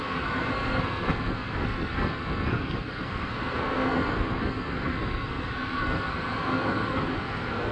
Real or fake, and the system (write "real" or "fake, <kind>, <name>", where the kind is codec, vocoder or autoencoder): fake, codec, SNAC